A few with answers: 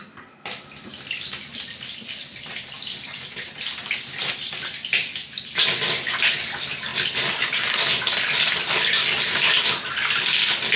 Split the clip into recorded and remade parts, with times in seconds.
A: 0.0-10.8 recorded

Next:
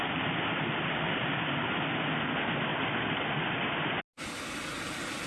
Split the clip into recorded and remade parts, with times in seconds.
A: 0.0-5.3 recorded

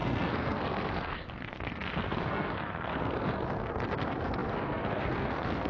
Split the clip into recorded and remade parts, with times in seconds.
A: 0.0-5.7 remade

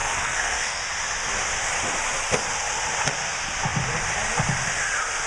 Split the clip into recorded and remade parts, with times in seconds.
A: 0.0-0.8 remade; 0.8-5.3 recorded